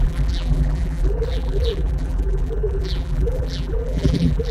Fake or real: fake